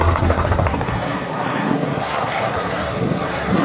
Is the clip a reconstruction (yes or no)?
yes